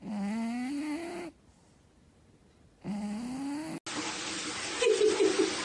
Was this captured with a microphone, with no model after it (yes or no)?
yes